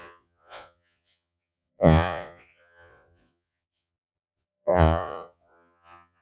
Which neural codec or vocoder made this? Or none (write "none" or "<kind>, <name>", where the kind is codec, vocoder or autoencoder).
vocoder, Vocos